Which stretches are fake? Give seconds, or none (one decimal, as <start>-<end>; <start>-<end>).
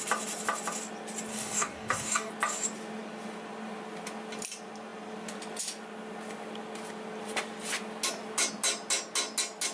1.3-2.3